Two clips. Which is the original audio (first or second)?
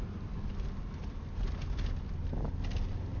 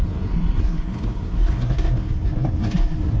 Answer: first